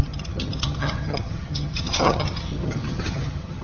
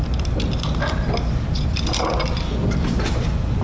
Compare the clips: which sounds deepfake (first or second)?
first